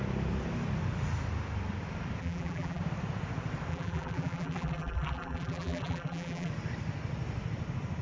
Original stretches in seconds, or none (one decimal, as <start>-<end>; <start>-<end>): 0.0-2.2; 2.8-3.7; 6.5-8.0